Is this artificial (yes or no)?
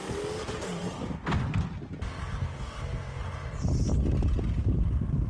no